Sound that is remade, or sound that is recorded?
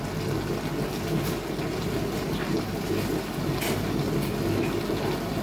recorded